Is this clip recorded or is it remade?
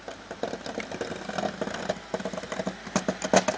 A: recorded